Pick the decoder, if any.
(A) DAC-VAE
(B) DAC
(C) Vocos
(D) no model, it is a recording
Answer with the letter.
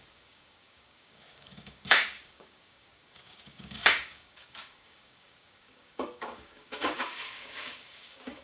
B